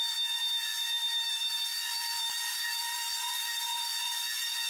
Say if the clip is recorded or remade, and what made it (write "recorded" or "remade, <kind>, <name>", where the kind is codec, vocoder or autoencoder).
remade, vocoder, BigVGAN v2